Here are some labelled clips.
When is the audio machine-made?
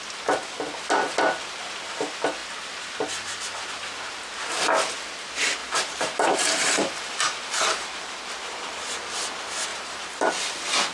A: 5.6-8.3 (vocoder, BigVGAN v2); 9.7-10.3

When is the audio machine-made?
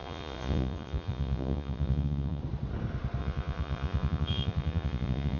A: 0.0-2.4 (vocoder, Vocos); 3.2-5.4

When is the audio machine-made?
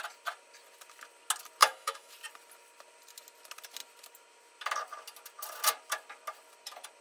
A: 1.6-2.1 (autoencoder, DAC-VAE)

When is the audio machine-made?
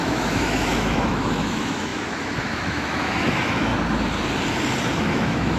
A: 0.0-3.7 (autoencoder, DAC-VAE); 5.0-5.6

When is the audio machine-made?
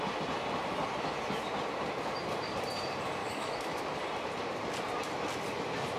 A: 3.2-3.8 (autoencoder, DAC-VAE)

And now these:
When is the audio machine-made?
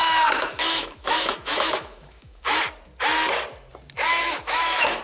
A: 0.0-2.6 (autoencoder, DAC-VAE); 4.1-5.0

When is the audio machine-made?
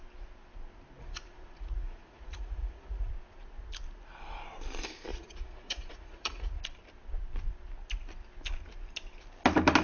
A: 1.0-3.1 (vocoder, Vocos); 5.1-6.6